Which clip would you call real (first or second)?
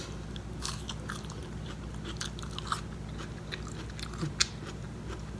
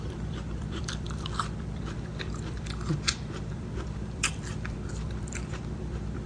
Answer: first